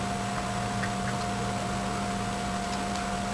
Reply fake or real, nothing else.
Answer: real